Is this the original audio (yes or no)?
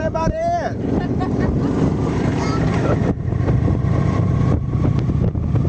no